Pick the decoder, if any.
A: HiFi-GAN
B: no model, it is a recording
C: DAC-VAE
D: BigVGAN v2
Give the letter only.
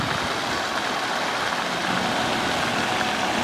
B